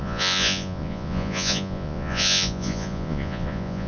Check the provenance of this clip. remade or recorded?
remade